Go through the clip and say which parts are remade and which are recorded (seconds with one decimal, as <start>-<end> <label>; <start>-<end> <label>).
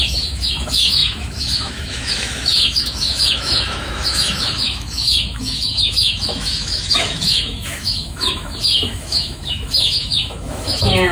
0.0-11.1 remade